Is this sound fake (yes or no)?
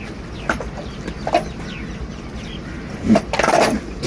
no